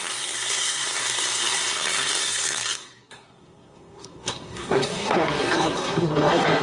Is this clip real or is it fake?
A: fake